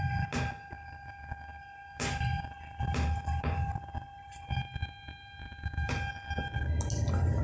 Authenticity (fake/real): real